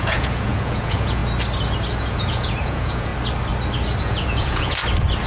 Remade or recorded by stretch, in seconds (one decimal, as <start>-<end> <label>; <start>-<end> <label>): 0.0-1.2 remade; 1.2-2.0 recorded; 2.0-3.1 remade; 3.1-4.0 recorded; 4.0-4.8 remade; 4.8-5.3 recorded